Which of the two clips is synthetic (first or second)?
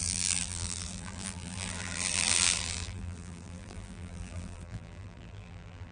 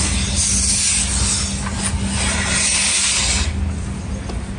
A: first